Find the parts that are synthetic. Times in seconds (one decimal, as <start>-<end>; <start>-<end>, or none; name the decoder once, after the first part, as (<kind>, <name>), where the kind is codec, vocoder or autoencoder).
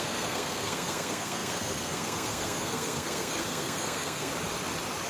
0.0-4.3 (codec, SNAC)